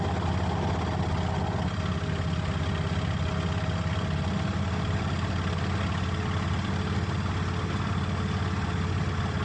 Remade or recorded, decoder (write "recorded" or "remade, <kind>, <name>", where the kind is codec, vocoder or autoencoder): recorded